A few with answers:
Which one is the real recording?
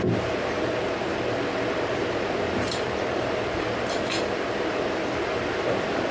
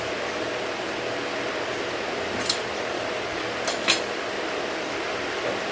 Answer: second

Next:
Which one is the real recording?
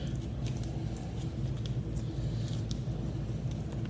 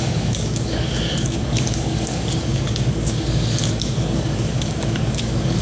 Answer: first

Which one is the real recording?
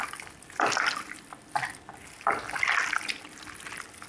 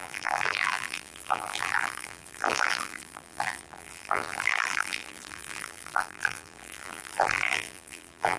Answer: first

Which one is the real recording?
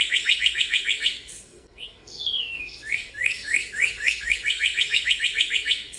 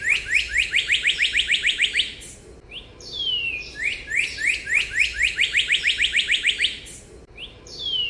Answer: second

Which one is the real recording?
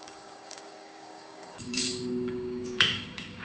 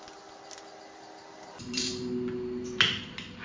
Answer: second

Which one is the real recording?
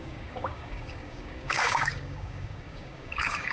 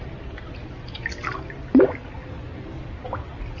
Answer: second